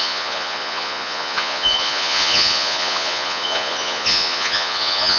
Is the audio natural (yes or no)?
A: no